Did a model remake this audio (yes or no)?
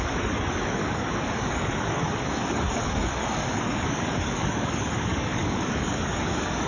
yes